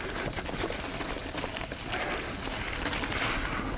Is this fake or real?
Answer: real